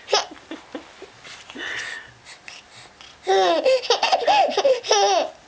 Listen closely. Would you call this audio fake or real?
real